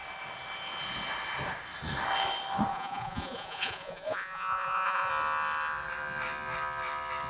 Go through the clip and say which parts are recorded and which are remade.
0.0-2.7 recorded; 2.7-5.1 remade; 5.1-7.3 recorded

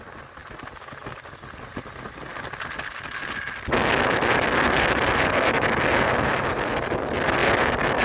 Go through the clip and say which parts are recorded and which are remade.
0.0-8.0 recorded

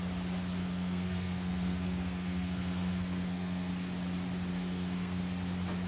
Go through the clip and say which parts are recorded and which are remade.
0.0-0.6 recorded; 0.6-3.7 remade; 3.7-4.5 recorded; 4.5-5.2 remade; 5.2-5.9 recorded

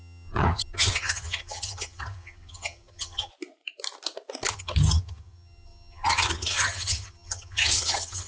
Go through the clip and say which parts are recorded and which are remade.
0.0-3.3 remade; 3.3-4.5 recorded; 4.5-8.3 remade

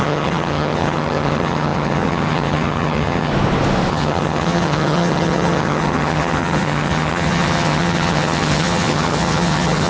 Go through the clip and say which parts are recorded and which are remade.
0.0-3.3 remade; 3.3-3.9 recorded; 3.9-9.9 remade